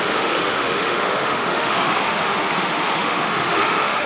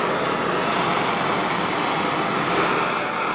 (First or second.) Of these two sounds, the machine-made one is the first